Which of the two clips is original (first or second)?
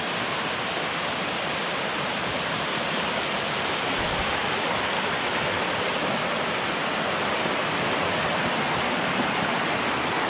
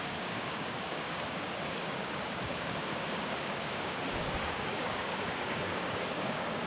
first